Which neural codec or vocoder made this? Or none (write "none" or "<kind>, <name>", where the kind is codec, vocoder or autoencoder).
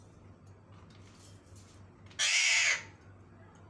none